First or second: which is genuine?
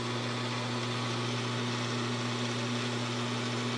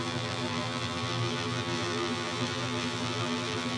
first